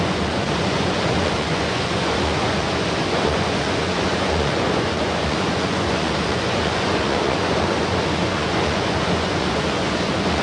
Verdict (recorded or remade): remade